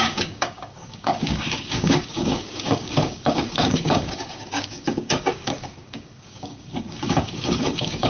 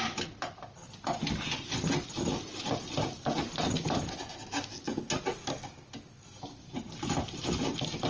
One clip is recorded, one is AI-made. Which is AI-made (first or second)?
first